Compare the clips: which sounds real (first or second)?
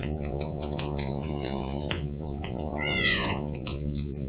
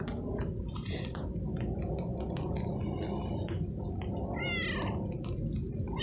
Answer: second